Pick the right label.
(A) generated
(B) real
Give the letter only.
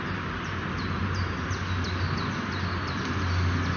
B